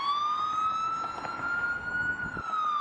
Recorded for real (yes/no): yes